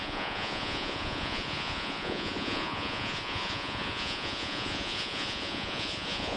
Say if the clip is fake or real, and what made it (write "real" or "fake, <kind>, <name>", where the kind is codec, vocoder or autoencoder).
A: fake, vocoder, Vocos